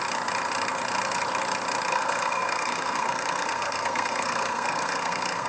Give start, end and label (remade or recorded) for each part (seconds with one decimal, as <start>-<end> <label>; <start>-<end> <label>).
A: 0.0-1.9 recorded; 1.9-5.5 remade